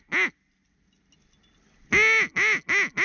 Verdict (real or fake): real